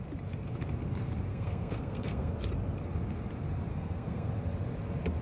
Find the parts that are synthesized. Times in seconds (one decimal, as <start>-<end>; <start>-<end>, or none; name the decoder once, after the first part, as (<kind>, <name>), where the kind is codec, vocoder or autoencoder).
1.3-2.3 (codec, SNAC); 3.7-4.3